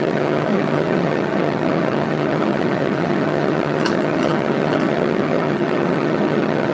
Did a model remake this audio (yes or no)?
yes